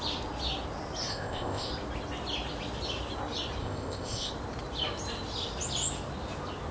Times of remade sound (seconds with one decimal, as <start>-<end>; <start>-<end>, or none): 1.1-1.7; 3.6-4.3